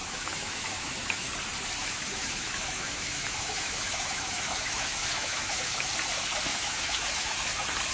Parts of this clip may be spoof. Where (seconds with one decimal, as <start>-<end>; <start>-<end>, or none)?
0.0-1.3; 1.8-5.9; 6.5-7.3